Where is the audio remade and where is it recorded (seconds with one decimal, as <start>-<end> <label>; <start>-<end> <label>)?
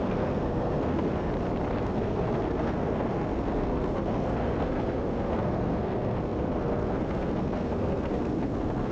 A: 0.0-1.3 remade; 1.3-1.8 recorded; 1.8-8.9 remade